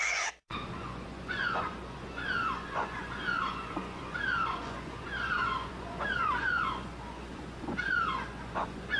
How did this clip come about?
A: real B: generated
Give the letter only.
B